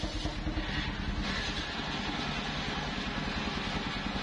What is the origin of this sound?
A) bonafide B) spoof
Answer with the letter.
A